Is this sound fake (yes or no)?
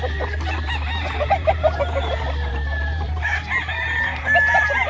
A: yes